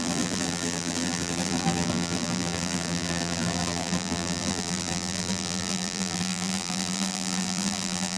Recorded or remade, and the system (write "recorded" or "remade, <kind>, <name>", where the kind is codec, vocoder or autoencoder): remade, vocoder, BigVGAN v2